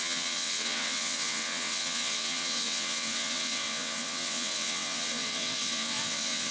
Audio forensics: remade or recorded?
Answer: remade